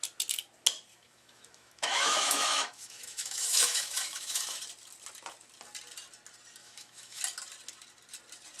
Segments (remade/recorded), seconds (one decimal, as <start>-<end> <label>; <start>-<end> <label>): 0.0-0.9 recorded; 0.9-4.6 remade; 4.6-6.6 recorded; 6.6-7.2 remade; 7.2-8.6 recorded